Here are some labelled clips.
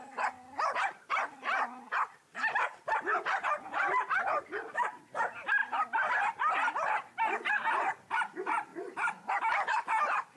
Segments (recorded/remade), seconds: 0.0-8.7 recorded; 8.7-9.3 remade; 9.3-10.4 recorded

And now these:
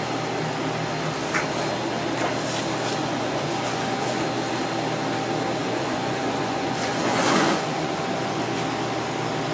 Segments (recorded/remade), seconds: 0.0-3.0 recorded; 3.0-4.2 remade; 4.2-5.6 recorded; 5.6-8.6 remade; 8.6-9.5 recorded

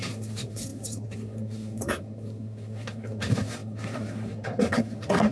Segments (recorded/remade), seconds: 0.0-5.3 remade

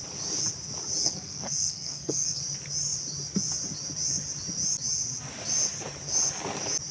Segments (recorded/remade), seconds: 0.0-1.0 recorded; 1.0-2.4 remade; 2.4-6.9 recorded

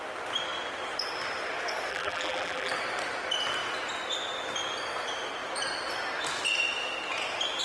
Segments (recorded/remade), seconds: 0.0-1.9 recorded; 1.9-2.7 remade; 2.7-7.6 recorded

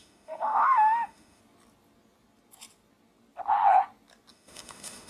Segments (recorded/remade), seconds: 0.0-1.4 remade; 1.4-4.3 recorded; 4.3-5.1 remade

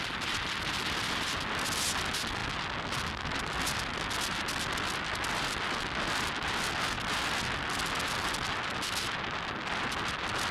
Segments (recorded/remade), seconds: 0.0-10.5 recorded

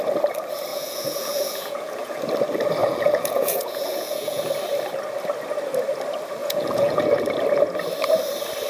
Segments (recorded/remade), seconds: 0.0-0.7 recorded; 0.7-2.2 remade; 2.2-2.8 recorded; 2.8-4.4 remade; 4.4-6.4 recorded; 6.4-7.0 remade; 7.0-8.7 recorded